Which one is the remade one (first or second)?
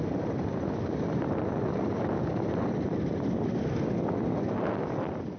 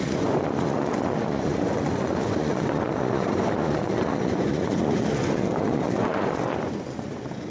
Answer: second